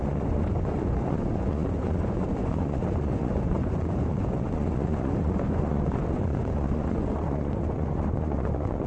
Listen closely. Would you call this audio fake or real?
fake